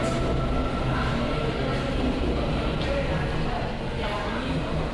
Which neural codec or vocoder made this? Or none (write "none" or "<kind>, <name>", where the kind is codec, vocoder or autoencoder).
none